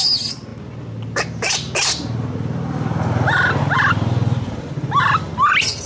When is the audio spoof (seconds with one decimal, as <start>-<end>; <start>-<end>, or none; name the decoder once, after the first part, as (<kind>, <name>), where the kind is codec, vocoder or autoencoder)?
none